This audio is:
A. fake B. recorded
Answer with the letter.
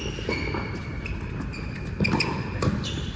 B